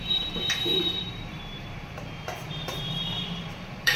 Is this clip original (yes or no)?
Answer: no